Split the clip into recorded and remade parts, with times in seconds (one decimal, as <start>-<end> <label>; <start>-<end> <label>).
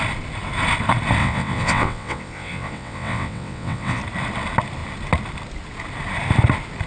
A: 0.0-1.2 recorded; 1.2-4.0 remade; 4.0-6.9 recorded